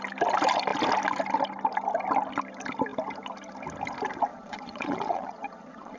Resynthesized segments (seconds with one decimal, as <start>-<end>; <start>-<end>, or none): 4.3-6.0